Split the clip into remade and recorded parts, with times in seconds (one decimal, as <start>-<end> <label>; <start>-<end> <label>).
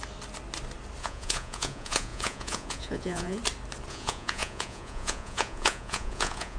0.0-1.0 recorded; 1.0-3.4 remade; 3.4-3.9 recorded; 3.9-6.6 remade